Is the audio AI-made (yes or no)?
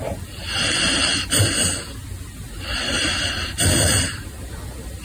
no